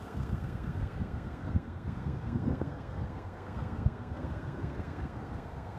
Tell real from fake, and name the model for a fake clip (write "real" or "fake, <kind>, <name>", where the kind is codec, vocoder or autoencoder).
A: fake, codec, SNAC